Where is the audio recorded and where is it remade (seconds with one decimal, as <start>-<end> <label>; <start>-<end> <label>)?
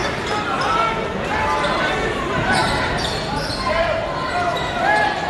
0.0-5.3 recorded